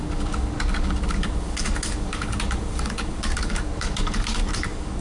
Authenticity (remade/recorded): remade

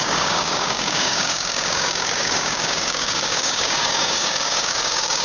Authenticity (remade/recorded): remade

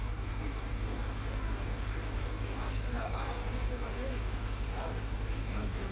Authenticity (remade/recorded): remade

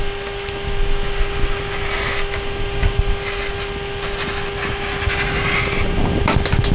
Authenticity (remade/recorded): recorded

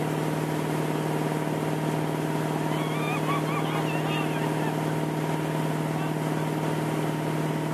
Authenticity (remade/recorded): recorded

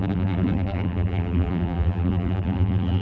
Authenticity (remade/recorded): remade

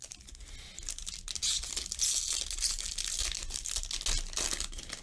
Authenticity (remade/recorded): recorded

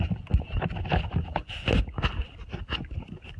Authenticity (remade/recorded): recorded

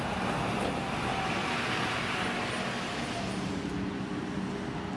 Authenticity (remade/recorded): recorded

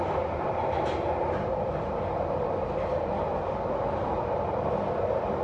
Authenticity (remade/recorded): recorded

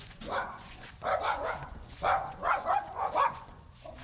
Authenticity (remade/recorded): remade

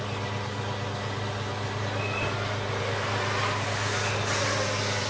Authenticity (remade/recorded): recorded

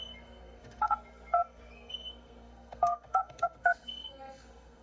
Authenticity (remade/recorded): remade